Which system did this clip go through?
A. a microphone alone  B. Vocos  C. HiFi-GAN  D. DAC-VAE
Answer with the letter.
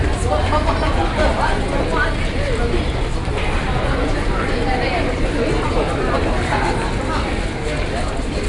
A